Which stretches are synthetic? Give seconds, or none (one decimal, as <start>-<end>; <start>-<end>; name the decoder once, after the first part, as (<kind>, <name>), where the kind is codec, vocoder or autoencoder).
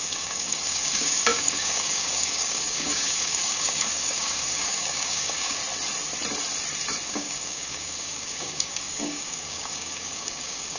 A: 0.0-5.6 (codec, DAC); 7.1-10.8